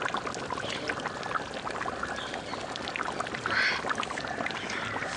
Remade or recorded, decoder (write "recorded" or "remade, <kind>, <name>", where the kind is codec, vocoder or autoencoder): recorded